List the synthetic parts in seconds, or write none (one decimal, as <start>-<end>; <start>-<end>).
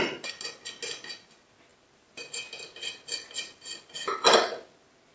none